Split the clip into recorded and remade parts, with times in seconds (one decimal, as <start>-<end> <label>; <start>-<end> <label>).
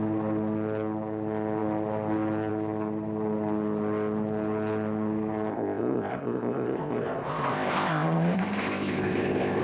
0.0-5.5 recorded; 5.5-9.6 remade